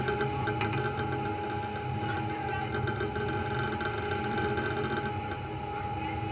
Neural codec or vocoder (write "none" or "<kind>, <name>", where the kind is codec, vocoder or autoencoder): none